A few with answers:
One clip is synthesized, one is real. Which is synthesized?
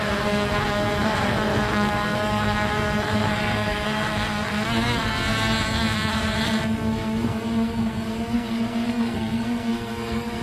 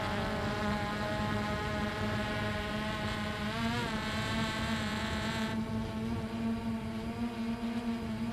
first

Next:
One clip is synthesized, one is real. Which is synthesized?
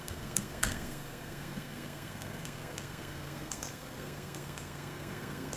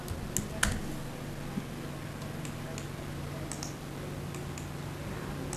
first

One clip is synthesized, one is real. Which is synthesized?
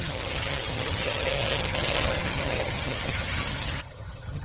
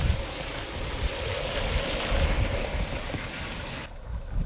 first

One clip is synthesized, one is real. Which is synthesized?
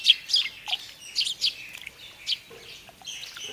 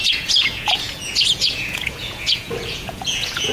second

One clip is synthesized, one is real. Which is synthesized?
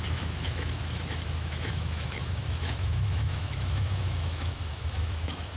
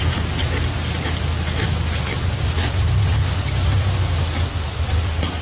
first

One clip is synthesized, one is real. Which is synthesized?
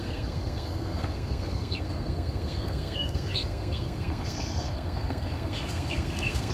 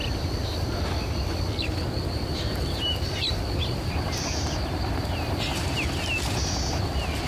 first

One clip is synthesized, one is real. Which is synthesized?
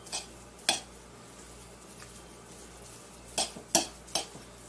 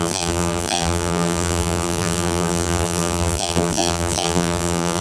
second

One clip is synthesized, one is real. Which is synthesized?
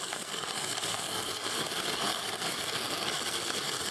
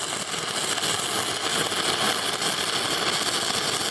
first